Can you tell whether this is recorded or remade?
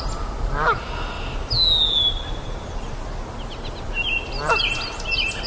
recorded